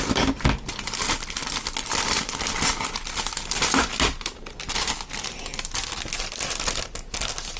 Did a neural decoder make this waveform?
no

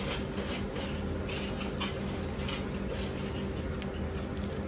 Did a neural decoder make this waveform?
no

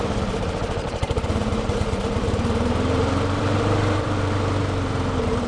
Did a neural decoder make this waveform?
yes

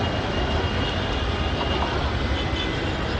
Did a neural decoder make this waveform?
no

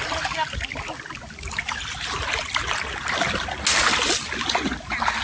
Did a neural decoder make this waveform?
no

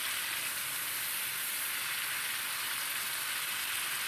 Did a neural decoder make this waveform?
no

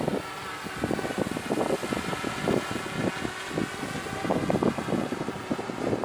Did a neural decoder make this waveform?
no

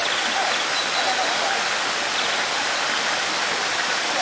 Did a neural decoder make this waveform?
no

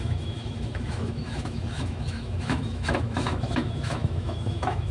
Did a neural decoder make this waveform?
yes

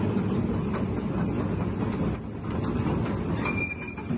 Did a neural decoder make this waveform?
no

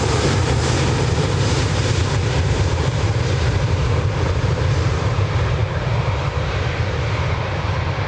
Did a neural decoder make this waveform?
yes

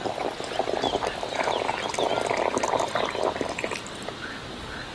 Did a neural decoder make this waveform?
no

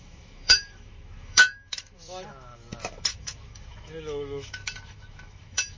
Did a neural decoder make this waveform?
yes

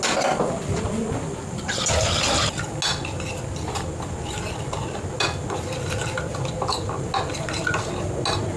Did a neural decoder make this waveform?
no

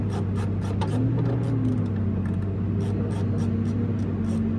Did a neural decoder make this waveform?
no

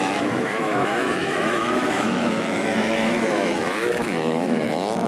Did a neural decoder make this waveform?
yes